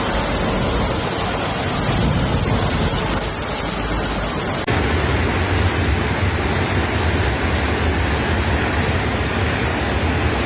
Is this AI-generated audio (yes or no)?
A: no